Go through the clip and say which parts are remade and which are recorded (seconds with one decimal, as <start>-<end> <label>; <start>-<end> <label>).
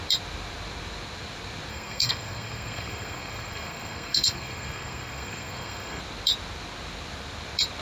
0.0-1.7 recorded; 1.7-6.0 remade; 6.0-7.8 recorded